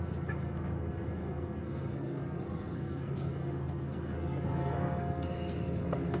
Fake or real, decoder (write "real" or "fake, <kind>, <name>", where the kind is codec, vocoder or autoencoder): fake, codec, SNAC